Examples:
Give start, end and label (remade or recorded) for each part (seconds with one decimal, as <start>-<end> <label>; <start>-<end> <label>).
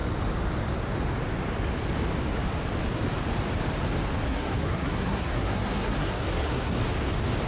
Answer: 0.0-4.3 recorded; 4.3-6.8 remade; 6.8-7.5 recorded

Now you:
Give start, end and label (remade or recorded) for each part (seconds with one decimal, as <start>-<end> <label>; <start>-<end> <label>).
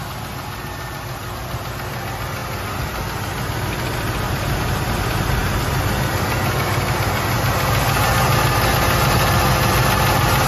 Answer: 0.0-10.5 recorded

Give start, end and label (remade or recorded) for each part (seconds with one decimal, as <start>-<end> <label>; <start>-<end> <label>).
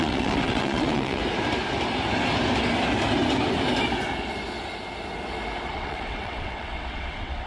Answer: 0.0-1.2 remade; 1.2-5.7 recorded; 5.7-7.5 remade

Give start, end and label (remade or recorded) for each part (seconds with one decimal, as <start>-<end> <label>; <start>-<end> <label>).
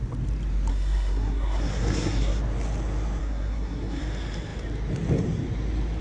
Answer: 0.0-0.7 recorded; 0.7-2.4 remade; 2.4-3.2 recorded; 3.2-4.0 remade; 4.0-6.0 recorded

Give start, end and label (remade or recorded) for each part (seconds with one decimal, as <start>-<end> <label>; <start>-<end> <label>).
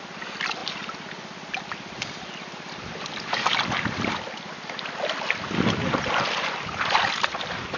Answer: 0.0-7.8 recorded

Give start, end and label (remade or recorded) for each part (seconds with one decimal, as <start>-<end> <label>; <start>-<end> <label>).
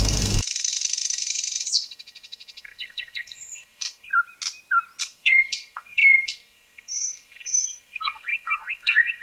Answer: 0.0-4.1 remade; 4.1-5.0 recorded; 5.0-9.2 remade